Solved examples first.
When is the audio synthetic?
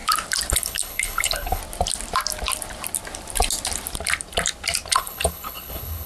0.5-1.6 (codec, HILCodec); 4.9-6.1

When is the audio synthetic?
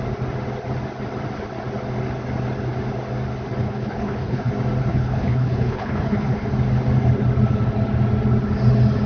3.6-4.5 (codec, HILCodec); 4.9-6.5